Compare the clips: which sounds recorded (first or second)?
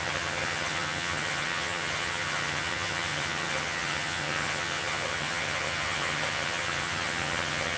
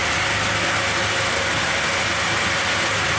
second